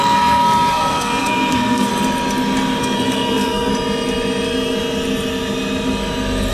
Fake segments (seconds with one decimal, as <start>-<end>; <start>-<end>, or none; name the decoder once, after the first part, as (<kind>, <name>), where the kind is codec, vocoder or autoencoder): 0.0-1.9 (codec, SNAC); 2.8-3.7